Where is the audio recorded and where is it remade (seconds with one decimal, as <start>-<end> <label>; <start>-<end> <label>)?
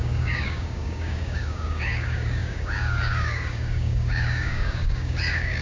0.0-5.6 remade